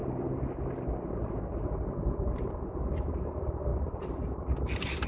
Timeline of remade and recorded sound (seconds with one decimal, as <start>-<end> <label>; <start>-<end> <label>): 0.0-5.1 recorded